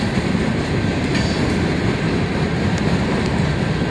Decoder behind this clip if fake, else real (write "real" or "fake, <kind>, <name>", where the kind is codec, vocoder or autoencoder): fake, vocoder, BigVGAN v2